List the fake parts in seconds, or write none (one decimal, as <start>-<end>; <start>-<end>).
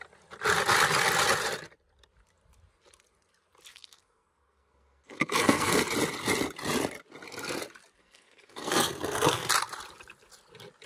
3.7-5.8; 8.0-9.5